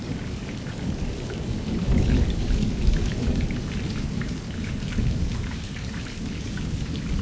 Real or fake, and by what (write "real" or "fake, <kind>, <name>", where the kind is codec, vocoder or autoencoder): fake, codec, DAC